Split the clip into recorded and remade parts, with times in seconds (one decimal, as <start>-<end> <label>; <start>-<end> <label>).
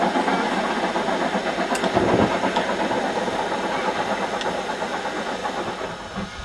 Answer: 0.0-6.4 recorded